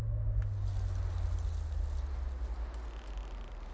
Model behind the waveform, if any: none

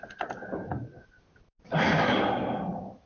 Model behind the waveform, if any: none